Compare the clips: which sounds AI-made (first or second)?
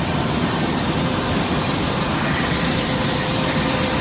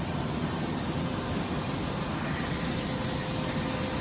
first